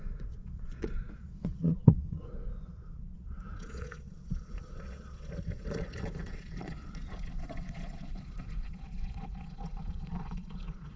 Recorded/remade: remade